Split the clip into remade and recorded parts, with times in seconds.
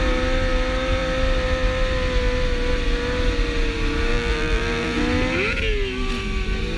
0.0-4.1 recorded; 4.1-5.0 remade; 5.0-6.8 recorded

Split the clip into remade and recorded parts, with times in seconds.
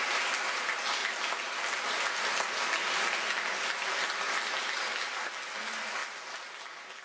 0.0-7.0 recorded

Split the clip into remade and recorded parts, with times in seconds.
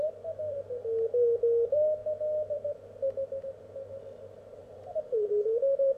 0.0-4.6 recorded; 4.6-5.3 remade; 5.3-6.0 recorded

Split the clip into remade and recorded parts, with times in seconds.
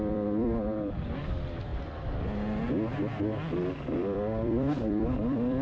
0.0-1.7 remade; 1.7-4.0 recorded; 4.0-5.6 remade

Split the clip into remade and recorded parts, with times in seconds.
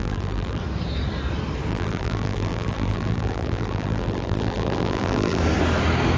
0.0-0.6 remade; 0.6-1.7 recorded; 1.7-5.4 remade; 5.4-6.2 recorded